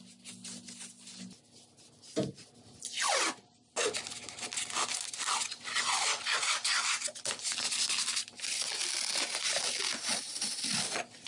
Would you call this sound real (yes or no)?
yes